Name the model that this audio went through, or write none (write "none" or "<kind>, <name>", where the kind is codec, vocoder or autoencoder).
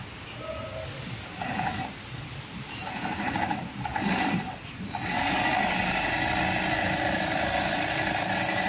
none